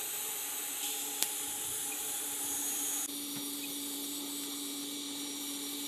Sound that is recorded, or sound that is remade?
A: recorded